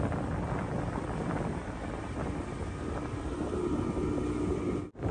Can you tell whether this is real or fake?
real